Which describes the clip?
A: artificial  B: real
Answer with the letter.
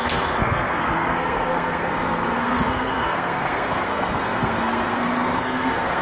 A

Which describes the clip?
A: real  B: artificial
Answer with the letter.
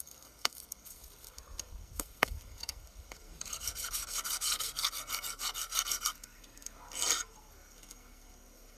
B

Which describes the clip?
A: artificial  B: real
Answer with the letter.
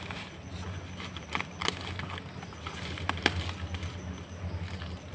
B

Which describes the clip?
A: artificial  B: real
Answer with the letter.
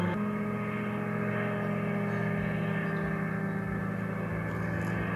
B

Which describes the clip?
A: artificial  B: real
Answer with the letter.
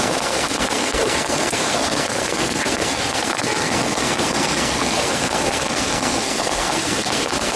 A